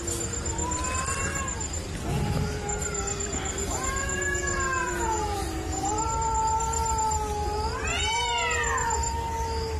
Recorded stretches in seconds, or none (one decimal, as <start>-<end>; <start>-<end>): 0.0-4.8; 6.1-9.8